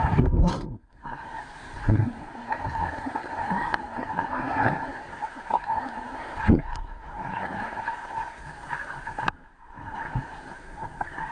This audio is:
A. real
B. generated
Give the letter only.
B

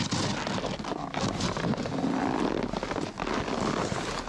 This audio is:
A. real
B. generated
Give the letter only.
A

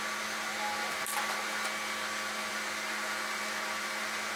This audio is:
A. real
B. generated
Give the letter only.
A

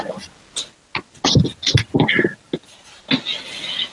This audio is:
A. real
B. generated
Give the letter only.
A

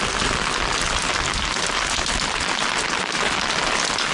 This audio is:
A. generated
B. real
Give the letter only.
B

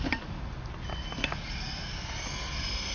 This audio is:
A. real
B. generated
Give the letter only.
A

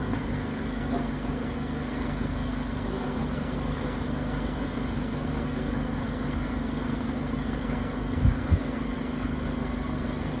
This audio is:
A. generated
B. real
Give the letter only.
A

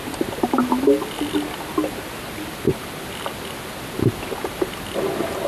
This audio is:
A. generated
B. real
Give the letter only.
B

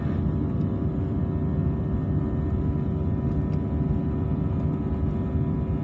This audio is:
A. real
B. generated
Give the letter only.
A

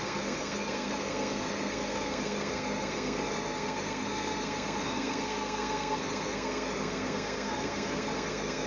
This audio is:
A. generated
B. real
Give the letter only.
A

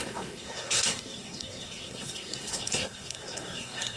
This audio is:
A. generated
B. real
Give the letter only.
A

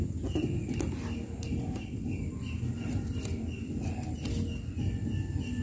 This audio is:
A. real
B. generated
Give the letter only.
A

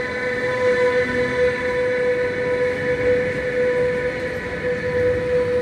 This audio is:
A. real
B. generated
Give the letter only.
A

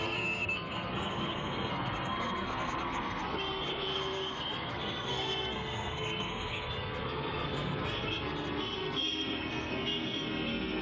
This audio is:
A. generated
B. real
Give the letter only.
A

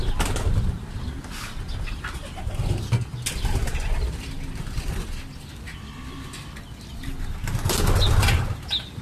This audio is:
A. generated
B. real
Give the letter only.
B